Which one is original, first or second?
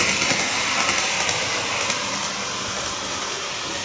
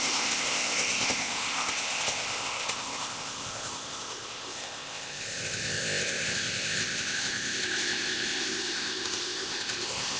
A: first